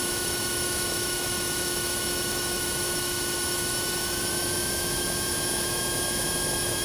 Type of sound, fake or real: fake